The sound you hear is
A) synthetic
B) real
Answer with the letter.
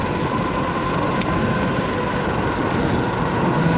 B